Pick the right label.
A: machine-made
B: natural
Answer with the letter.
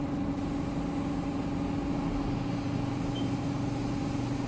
B